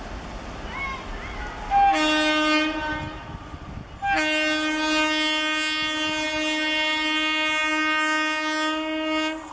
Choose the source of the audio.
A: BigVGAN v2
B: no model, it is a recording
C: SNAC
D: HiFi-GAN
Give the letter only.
B